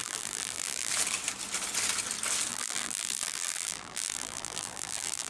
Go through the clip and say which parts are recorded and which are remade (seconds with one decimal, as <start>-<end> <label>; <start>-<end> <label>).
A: 0.0-0.9 remade; 0.9-2.5 recorded; 2.5-5.3 remade